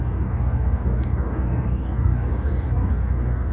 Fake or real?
fake